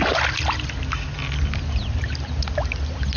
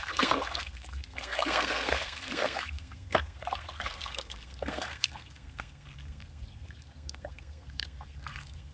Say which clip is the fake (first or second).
second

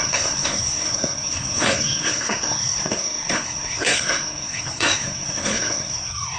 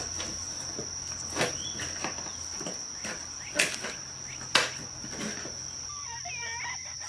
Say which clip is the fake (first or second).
first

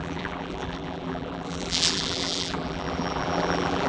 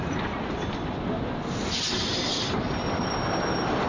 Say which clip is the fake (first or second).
first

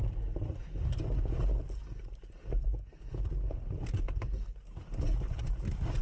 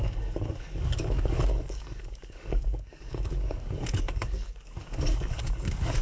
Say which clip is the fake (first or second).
second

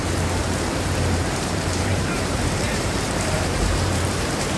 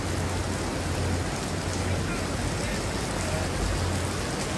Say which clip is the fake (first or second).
first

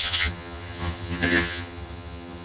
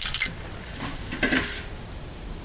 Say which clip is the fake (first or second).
first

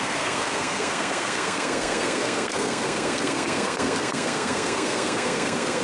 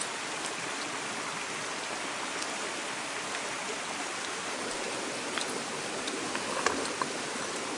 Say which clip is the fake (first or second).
first